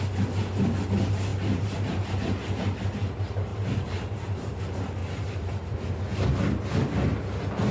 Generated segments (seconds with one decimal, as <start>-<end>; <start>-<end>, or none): 1.3-2.0; 3.5-4.6; 5.0-6.0